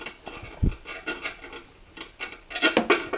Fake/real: real